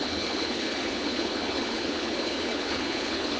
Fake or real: fake